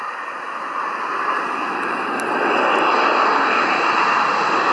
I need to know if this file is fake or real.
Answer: real